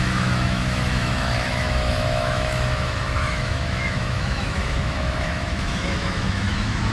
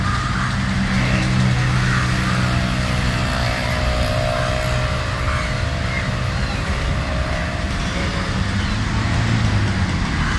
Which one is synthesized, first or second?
first